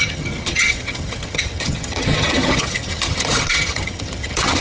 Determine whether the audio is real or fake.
fake